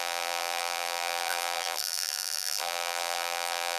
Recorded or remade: remade